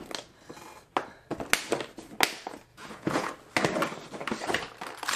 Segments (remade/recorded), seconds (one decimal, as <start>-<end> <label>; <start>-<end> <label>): 0.0-2.7 recorded; 2.7-3.3 remade; 3.3-5.2 recorded